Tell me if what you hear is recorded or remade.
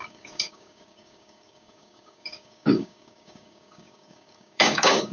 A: remade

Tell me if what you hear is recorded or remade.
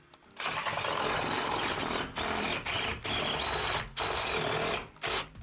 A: recorded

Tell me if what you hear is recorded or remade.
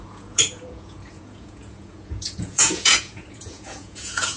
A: remade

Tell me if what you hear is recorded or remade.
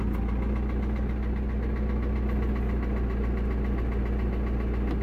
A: recorded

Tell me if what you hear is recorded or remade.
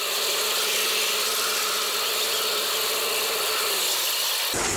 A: recorded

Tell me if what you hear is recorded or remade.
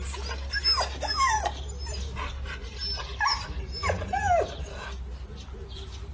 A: recorded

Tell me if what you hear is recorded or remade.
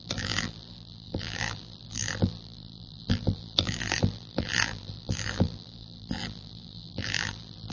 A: remade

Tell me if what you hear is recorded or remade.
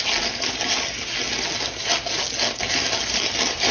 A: recorded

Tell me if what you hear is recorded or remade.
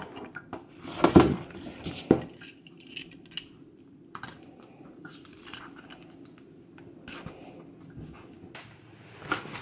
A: recorded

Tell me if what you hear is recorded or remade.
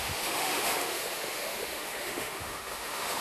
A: remade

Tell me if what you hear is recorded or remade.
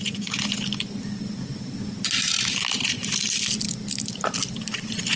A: recorded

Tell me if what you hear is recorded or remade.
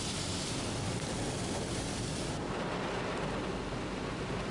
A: remade